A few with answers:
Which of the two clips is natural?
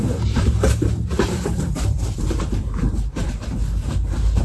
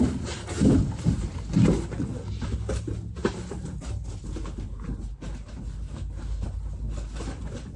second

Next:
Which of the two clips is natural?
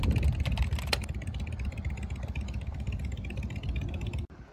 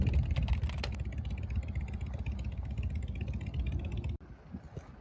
second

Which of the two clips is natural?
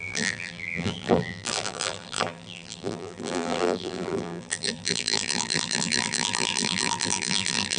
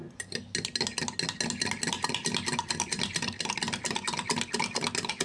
second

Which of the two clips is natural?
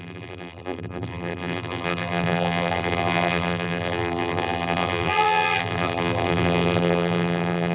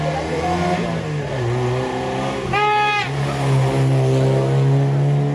second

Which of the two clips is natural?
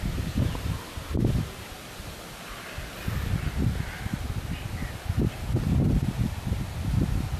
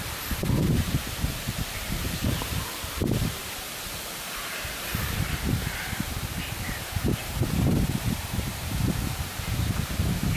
first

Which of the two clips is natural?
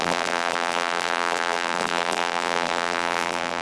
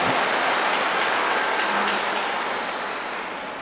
second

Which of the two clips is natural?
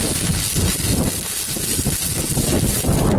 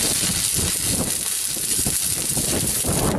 first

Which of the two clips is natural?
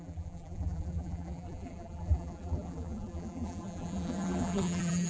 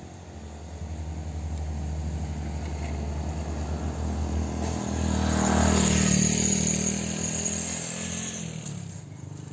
second